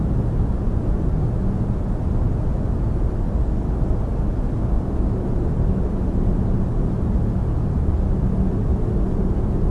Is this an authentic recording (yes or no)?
yes